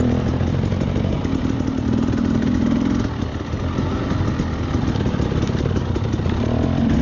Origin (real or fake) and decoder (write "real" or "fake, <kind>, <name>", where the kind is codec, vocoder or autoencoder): real